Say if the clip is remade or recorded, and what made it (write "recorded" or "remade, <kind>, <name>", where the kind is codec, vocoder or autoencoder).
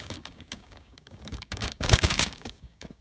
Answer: remade, codec, DAC